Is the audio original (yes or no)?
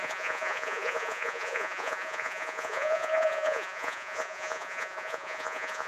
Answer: no